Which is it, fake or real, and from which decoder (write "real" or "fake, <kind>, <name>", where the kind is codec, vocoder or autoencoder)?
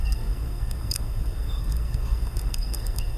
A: fake, codec, SNAC